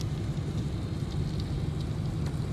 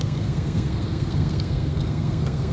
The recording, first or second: first